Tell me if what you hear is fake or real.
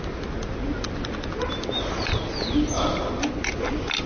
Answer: real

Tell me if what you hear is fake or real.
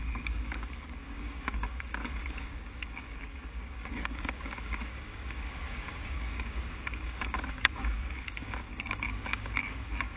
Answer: fake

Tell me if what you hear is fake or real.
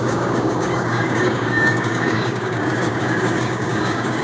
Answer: fake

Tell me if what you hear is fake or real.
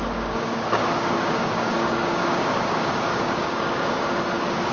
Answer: fake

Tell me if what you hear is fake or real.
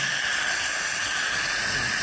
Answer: real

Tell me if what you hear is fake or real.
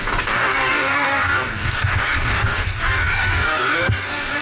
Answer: fake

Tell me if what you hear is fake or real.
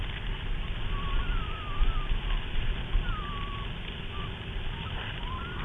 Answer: real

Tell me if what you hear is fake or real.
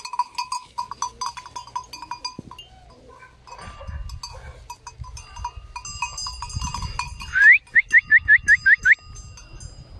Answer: real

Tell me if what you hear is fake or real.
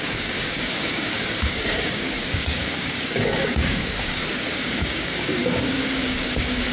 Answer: fake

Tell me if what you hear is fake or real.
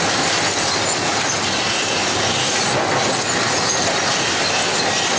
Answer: real